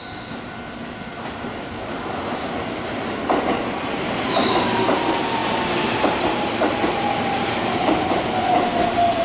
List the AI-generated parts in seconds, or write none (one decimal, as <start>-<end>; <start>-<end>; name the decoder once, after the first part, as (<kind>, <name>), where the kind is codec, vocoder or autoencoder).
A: 5.4-7.4 (vocoder, BigVGAN v2)